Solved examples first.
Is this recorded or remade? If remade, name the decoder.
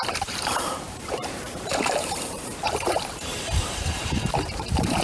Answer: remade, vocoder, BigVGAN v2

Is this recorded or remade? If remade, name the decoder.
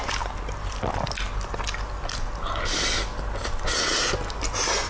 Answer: recorded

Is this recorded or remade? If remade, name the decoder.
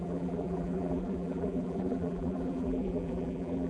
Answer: remade, vocoder, BigVGAN v2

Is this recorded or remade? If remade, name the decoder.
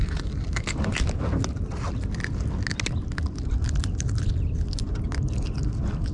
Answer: recorded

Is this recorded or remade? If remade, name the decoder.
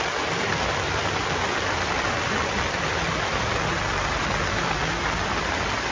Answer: recorded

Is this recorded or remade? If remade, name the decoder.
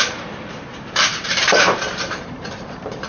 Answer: remade, vocoder, BigVGAN v2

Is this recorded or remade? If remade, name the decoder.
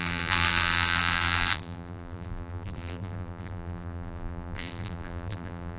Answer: remade, vocoder, BigVGAN v2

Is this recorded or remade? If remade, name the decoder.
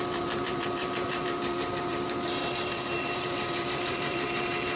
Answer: remade, vocoder, BigVGAN v2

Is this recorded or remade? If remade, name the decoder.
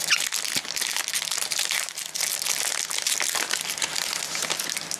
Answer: recorded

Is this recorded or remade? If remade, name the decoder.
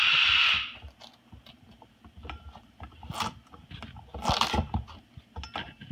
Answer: remade, vocoder, BigVGAN v2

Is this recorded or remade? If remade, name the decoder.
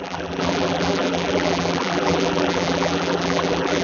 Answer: remade, vocoder, BigVGAN v2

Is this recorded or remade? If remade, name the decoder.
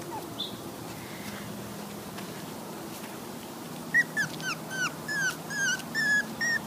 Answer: recorded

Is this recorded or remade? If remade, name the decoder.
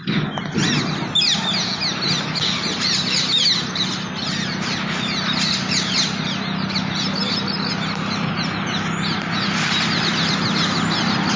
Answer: recorded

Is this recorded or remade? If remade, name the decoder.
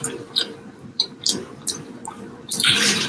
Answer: remade, vocoder, BigVGAN v2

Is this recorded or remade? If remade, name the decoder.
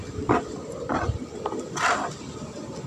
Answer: recorded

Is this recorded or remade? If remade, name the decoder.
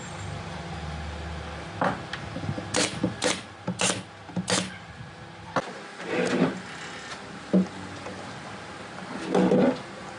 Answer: recorded